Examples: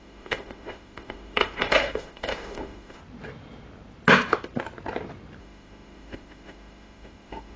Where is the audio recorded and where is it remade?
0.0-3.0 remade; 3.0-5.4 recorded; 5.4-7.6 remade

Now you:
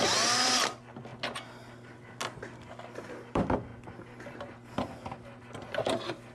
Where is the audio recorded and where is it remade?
0.0-1.1 remade; 1.1-2.7 recorded; 2.7-3.7 remade; 3.7-5.4 recorded; 5.4-6.3 remade

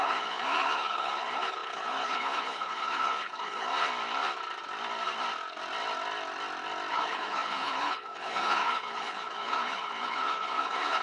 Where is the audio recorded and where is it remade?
0.0-3.7 remade; 3.7-6.9 recorded; 6.9-11.0 remade

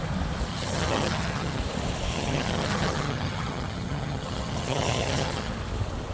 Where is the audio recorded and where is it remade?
0.0-0.5 recorded; 0.5-1.6 remade; 1.6-2.1 recorded; 2.1-5.5 remade; 5.5-6.1 recorded

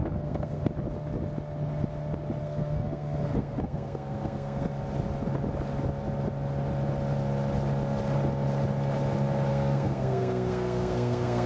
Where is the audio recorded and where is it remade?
0.0-0.7 remade; 0.7-2.4 recorded; 2.4-4.7 remade; 4.7-9.5 recorded; 9.5-11.5 remade

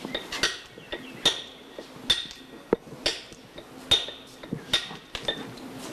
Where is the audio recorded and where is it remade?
0.0-5.9 recorded

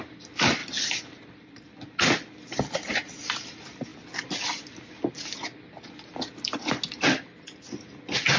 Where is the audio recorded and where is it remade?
0.0-8.4 recorded

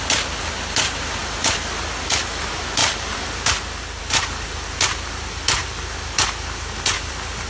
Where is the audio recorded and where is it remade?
0.0-7.5 recorded